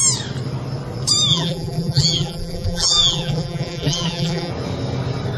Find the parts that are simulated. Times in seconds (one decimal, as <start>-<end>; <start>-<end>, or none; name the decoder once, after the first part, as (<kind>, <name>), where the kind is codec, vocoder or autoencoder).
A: 1.3-4.5 (vocoder, BigVGAN v2)